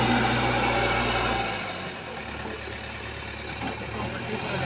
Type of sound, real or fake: real